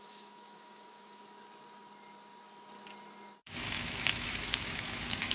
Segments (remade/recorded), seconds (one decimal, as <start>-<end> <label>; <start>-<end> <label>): 0.0-1.2 remade; 1.2-3.4 recorded; 3.4-5.3 remade